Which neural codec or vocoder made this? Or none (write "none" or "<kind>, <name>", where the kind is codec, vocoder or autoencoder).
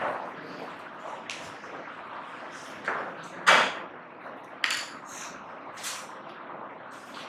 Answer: none